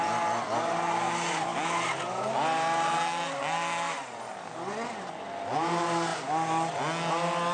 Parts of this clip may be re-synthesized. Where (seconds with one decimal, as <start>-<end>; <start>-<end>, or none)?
none